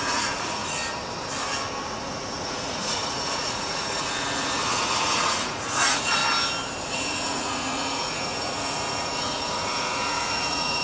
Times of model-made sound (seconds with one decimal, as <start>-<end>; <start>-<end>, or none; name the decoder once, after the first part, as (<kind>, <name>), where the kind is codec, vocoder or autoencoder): 0.0-0.6 (vocoder, Vocos); 1.9-6.2; 6.8-10.8